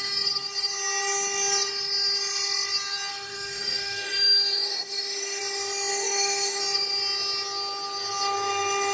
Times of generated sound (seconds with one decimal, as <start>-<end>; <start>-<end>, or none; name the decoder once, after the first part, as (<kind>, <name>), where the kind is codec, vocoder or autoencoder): 3.1-5.4 (autoencoder, DAC-VAE); 5.9-6.6